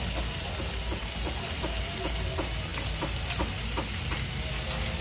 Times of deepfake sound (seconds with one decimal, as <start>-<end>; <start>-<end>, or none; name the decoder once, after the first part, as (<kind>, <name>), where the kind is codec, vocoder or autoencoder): none